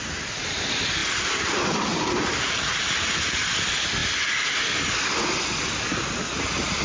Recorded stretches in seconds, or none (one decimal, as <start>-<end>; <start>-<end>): 0.0-1.0; 2.9-6.8